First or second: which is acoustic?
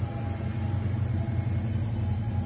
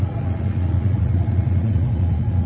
first